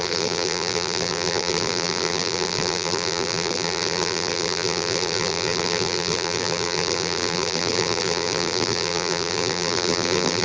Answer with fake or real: fake